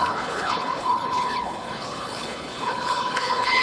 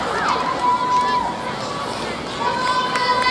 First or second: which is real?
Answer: second